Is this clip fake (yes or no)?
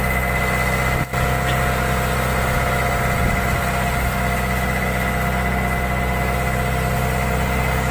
no